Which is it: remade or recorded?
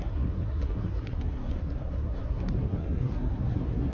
remade